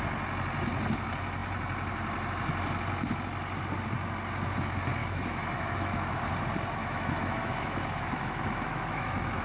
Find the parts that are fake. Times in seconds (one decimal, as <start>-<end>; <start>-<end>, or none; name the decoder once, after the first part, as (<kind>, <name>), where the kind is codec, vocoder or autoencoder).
5.0-6.2 (autoencoder, DAC-VAE); 6.8-9.4

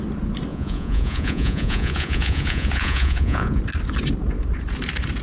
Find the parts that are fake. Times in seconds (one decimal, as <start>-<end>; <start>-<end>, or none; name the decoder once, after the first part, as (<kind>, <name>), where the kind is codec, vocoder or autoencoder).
0.5-3.6 (vocoder, Vocos)